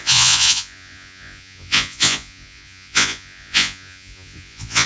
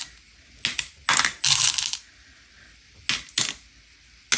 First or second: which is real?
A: second